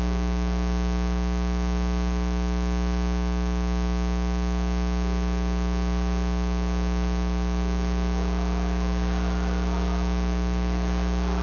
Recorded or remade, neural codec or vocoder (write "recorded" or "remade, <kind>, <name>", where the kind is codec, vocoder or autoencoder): recorded